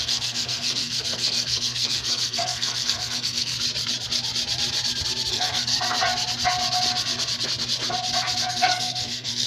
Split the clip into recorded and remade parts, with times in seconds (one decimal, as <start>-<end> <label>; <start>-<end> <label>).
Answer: 0.0-3.5 remade; 3.5-5.3 recorded; 5.3-5.7 remade; 5.7-8.5 recorded; 8.5-9.5 remade